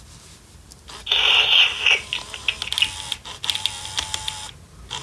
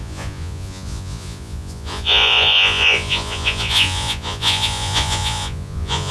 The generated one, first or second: second